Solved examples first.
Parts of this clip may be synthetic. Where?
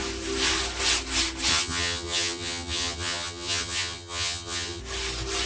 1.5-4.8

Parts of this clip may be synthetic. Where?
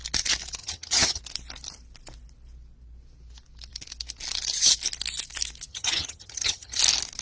0.6-1.2; 5.7-6.8